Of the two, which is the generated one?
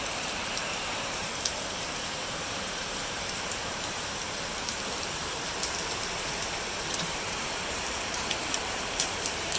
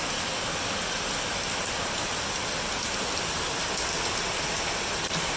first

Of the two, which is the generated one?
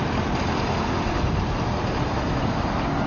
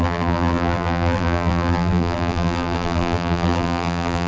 second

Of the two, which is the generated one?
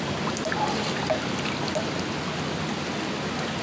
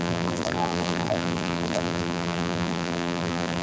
second